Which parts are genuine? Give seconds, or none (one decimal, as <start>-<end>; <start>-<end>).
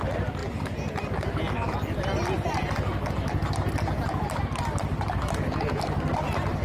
0.0-6.6